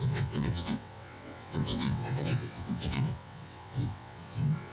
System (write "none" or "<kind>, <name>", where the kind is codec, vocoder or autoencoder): vocoder, WaveNeXt